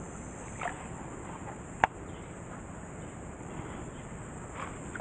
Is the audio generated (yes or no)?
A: no